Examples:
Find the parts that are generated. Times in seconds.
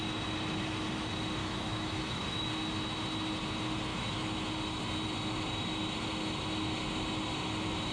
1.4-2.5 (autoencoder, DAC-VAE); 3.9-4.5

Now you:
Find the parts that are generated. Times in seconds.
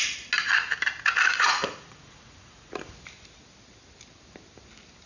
1.2-2.7 (vocoder, Vocos)